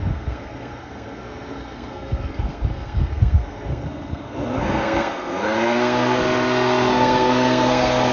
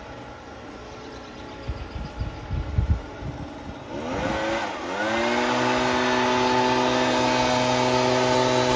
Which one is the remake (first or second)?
first